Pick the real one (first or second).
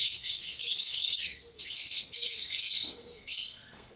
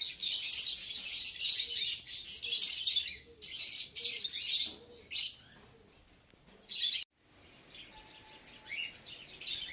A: second